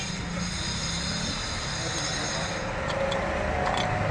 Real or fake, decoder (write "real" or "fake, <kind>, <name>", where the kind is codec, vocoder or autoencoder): real